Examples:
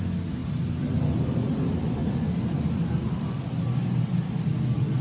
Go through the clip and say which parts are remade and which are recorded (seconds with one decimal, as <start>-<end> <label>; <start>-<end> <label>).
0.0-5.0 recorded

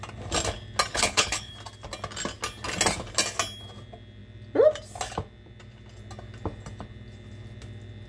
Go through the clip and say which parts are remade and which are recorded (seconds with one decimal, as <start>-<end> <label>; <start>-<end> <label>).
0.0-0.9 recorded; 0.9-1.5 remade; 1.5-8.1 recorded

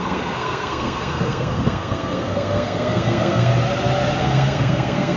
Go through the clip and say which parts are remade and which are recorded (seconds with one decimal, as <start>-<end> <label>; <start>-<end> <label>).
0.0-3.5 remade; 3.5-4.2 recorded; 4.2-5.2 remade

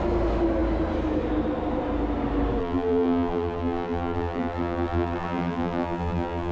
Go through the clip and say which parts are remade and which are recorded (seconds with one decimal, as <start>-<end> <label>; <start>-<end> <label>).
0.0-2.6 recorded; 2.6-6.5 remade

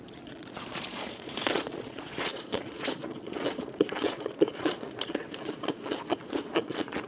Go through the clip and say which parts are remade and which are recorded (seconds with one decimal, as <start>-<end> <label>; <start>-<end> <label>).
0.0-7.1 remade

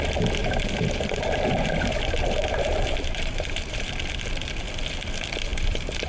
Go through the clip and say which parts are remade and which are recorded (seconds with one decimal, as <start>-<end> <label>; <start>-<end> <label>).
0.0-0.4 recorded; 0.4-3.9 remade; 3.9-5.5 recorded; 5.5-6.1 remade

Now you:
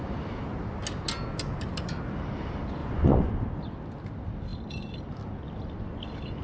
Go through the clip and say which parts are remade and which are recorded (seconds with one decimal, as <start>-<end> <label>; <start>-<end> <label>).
0.0-2.8 recorded; 2.8-3.3 remade; 3.3-6.4 recorded